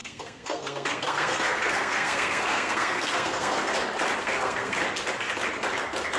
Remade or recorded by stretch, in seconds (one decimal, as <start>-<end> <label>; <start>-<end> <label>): 0.0-3.7 remade; 3.7-4.2 recorded; 4.2-4.8 remade; 4.8-6.2 recorded